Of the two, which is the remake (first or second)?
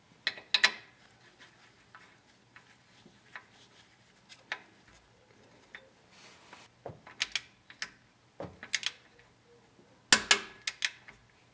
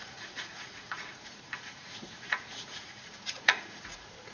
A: second